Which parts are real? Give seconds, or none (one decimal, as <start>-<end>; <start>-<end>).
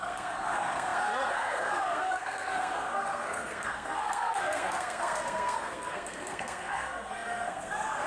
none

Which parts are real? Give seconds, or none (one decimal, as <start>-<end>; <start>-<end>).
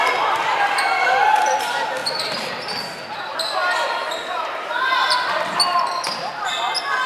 0.0-7.1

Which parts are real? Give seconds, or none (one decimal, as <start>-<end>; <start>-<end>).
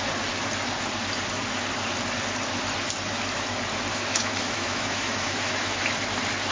0.0-3.9; 5.8-6.5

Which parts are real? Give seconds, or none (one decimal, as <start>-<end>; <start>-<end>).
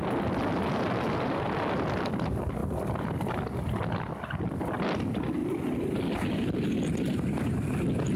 0.0-8.2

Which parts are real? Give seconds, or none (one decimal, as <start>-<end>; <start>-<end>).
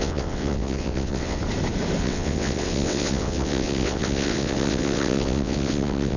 1.4-2.0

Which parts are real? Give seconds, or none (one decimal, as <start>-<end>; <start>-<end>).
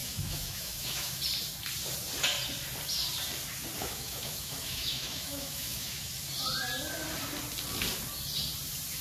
1.2-3.8; 6.1-9.0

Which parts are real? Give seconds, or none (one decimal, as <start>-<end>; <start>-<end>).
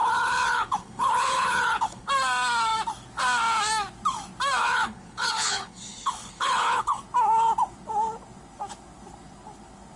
2.1-4.6; 7.0-10.0